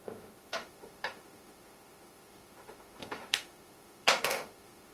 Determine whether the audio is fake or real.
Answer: fake